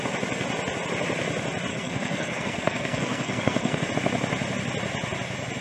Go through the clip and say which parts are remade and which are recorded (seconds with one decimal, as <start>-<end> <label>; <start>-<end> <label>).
0.0-1.7 recorded; 1.7-3.9 remade; 3.9-5.6 recorded